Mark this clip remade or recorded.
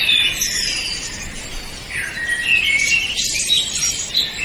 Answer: recorded